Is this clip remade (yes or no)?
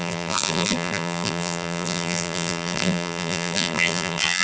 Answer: yes